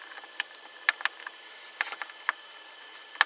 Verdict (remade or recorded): recorded